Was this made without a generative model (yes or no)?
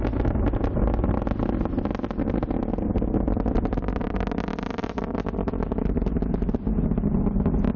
yes